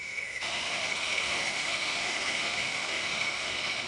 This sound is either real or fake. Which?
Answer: fake